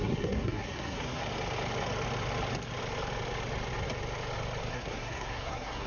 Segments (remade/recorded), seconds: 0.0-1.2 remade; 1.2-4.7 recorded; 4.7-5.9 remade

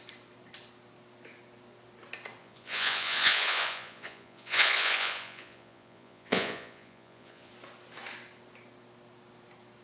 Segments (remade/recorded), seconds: 0.0-2.4 recorded; 2.4-7.5 remade; 7.5-9.8 recorded

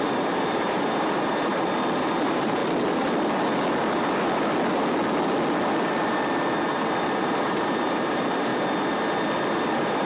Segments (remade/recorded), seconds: 0.0-1.5 remade; 1.5-2.2 recorded; 2.2-2.6 remade; 2.6-7.2 recorded; 7.2-8.5 remade; 8.5-9.5 recorded; 9.5-10.1 remade

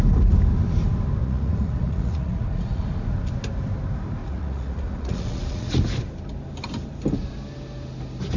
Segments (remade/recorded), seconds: 0.0-1.2 recorded; 1.2-2.8 remade; 2.8-4.2 recorded; 4.2-5.7 remade; 5.7-8.4 recorded

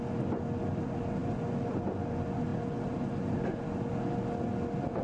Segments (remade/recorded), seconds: 0.0-5.0 recorded

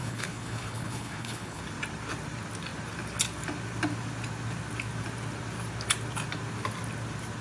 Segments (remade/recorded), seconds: 0.0-1.6 remade; 1.6-7.4 recorded

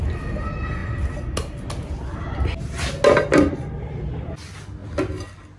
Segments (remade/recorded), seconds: 0.0-5.6 recorded